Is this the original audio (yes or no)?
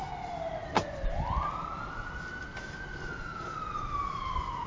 yes